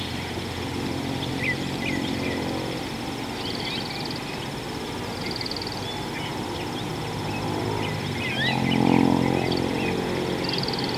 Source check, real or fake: real